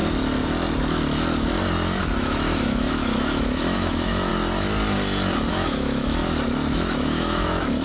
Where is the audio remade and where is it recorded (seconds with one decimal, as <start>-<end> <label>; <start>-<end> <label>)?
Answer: 0.0-2.0 recorded; 2.0-4.3 remade; 4.3-5.5 recorded; 5.5-6.2 remade; 6.2-6.7 recorded; 6.7-7.8 remade